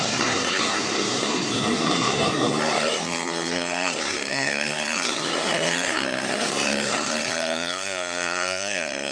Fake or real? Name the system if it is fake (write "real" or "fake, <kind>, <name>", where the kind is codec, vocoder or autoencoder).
fake, codec, SNAC